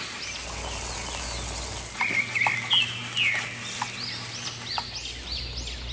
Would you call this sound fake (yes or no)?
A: no